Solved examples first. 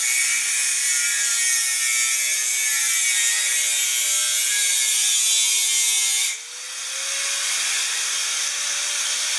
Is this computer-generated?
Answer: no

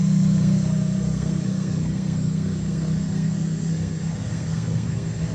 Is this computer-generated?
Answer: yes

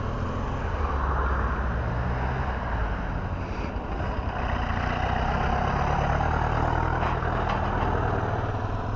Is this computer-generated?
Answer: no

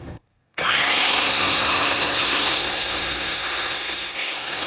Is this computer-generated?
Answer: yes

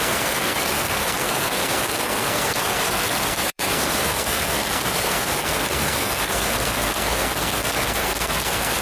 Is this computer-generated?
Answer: yes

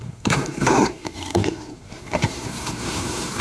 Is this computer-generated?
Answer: yes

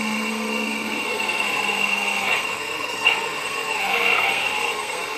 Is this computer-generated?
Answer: yes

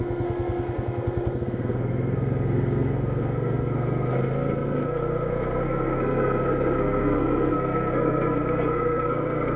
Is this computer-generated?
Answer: yes